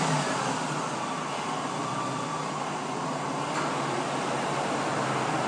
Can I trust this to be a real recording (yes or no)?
yes